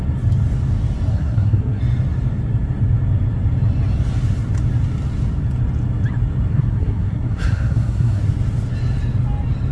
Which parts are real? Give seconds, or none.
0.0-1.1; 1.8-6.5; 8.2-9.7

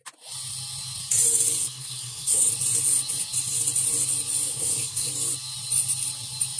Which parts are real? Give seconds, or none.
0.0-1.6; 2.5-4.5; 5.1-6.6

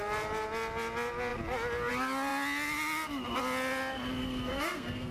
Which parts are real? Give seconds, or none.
0.0-4.2

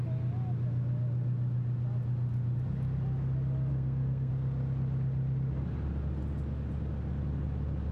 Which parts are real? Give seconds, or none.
0.0-3.7; 4.3-7.9

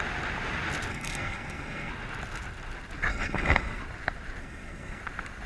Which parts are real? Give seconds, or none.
0.0-0.9; 1.9-3.1; 3.8-4.4; 5.0-5.5

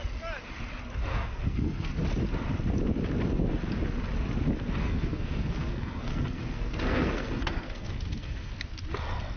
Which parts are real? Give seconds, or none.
0.0-1.1; 1.9-4.8; 8.5-9.4

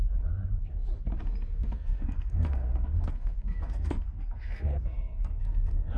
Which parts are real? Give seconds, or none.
0.0-1.5